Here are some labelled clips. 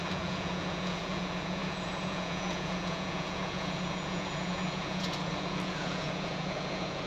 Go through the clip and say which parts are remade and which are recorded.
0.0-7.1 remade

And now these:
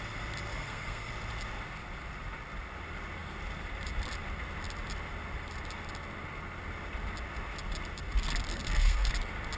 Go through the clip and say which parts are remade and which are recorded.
0.0-0.5 recorded; 0.5-1.1 remade; 1.1-8.5 recorded; 8.5-9.1 remade; 9.1-9.6 recorded

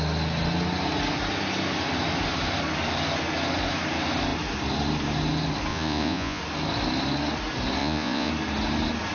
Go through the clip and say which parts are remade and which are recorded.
0.0-5.7 recorded; 5.7-6.4 remade; 6.4-7.8 recorded; 7.8-8.3 remade; 8.3-9.1 recorded

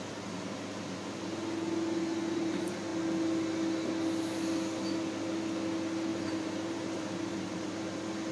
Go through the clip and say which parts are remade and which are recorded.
0.0-6.1 recorded; 6.1-7.7 remade; 7.7-8.3 recorded

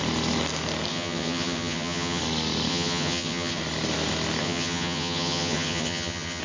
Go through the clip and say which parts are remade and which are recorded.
0.0-0.9 recorded; 0.9-2.2 remade; 2.2-2.7 recorded; 2.7-3.6 remade; 3.6-4.4 recorded; 4.4-6.4 remade

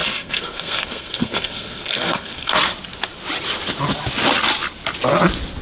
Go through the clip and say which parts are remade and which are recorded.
0.0-2.6 remade; 2.6-5.6 recorded

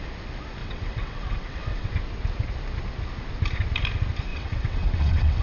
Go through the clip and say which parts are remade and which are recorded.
0.0-0.6 recorded; 0.6-1.9 remade; 1.9-4.3 recorded; 4.3-5.4 remade

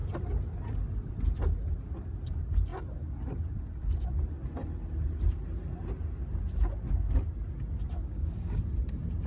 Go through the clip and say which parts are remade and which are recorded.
0.0-8.0 recorded; 8.0-8.6 remade; 8.6-9.3 recorded